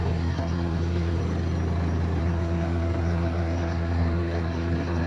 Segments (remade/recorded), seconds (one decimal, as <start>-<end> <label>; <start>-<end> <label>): 0.0-1.2 remade; 1.2-2.2 recorded; 2.2-5.1 remade